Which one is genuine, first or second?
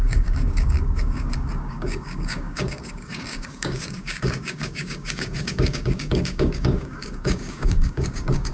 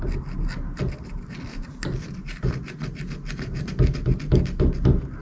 second